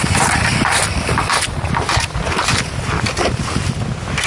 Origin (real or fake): real